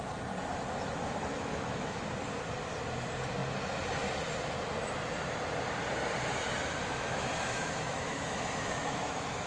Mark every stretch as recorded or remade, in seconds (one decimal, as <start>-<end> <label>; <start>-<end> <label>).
0.0-1.3 recorded; 1.3-2.0 remade; 2.0-6.8 recorded; 6.8-9.5 remade